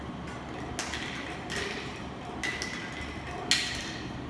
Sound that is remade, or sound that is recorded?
recorded